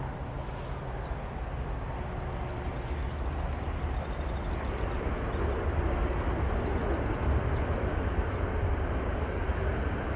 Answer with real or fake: real